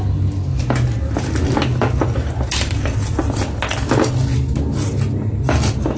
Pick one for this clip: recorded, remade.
recorded